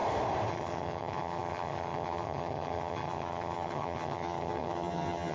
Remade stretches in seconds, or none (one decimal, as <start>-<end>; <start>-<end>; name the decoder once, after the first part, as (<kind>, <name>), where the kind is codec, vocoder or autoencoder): 0.5-5.3 (vocoder, HiFi-GAN)